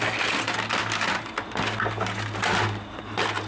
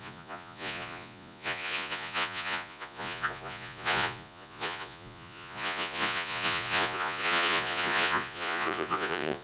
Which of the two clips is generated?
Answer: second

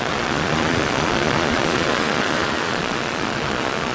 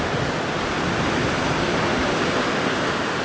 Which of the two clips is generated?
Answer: first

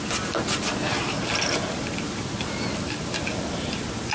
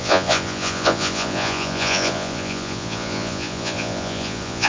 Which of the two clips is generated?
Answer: second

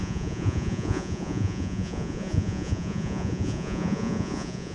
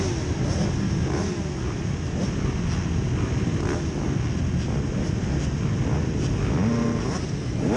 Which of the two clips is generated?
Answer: first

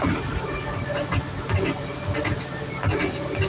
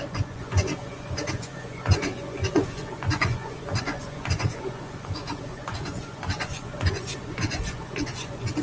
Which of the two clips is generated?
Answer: second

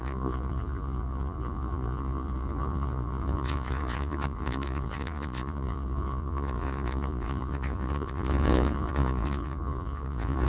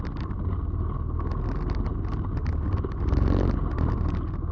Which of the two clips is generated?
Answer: first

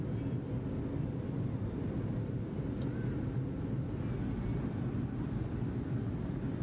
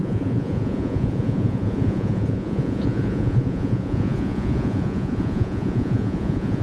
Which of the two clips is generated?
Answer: second